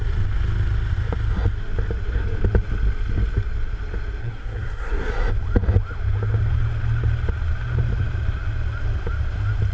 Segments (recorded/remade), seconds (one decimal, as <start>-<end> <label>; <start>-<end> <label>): 0.0-4.2 recorded; 4.2-5.1 remade; 5.1-9.7 recorded